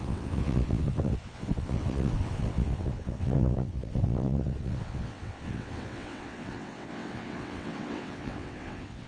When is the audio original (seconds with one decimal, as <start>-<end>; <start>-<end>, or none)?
none